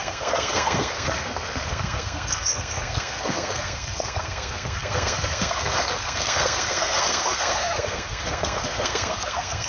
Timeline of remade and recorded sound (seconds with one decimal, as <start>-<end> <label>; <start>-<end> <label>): 0.0-9.7 remade